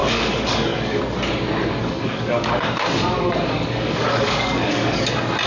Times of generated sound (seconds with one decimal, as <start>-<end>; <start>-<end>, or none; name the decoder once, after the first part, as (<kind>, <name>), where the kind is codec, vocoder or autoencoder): 0.0-1.0 (codec, DAC); 1.8-5.1